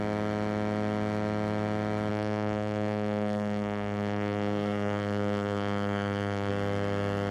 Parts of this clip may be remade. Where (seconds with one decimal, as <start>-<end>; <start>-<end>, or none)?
2.1-6.5